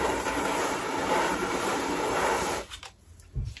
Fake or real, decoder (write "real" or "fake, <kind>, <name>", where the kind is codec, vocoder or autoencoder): fake, vocoder, BigVGAN v2